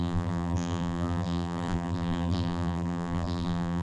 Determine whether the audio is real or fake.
fake